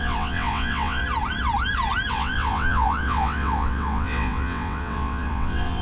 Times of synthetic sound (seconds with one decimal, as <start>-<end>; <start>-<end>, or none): 0.0-1.0; 2.1-5.8